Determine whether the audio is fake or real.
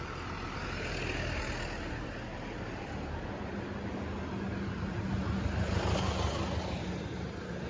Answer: real